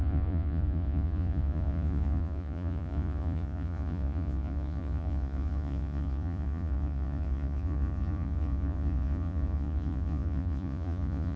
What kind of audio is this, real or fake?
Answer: fake